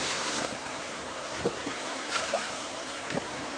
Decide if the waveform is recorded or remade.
remade